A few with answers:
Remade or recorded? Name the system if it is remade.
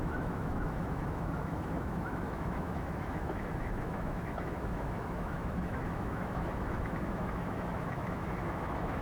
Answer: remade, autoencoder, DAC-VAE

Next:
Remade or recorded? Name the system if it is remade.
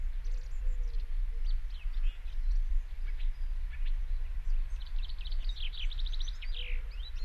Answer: recorded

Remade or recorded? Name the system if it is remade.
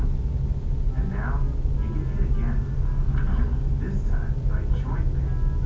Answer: recorded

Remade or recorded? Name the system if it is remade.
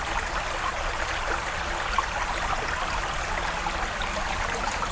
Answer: recorded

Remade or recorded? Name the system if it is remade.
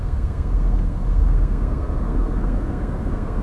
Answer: remade, codec, SNAC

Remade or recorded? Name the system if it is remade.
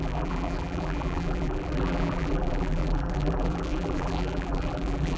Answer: remade, vocoder, BigVGAN v2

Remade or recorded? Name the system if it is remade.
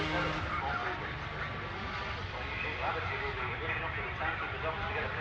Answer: recorded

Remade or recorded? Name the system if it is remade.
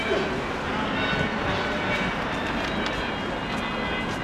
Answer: recorded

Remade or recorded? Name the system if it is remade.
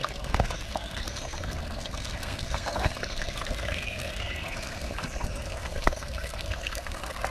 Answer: remade, codec, SNAC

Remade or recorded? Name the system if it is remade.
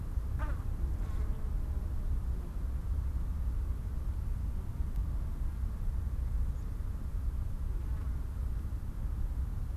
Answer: recorded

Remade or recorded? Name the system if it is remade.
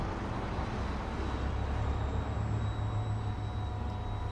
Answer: recorded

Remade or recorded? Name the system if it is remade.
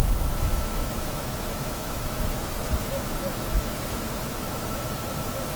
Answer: remade, autoencoder, DAC-VAE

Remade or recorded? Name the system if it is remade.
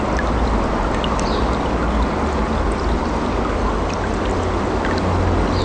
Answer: recorded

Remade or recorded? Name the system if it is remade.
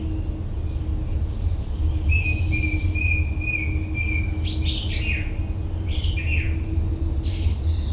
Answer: recorded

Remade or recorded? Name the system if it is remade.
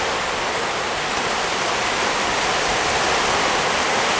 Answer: recorded